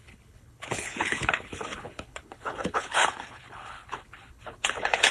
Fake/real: fake